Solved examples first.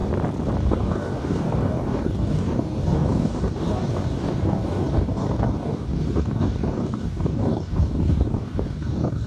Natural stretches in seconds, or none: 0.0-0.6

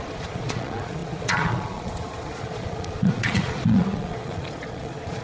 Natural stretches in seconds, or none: none

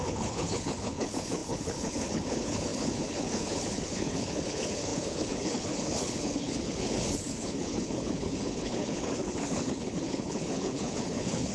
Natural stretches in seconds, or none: none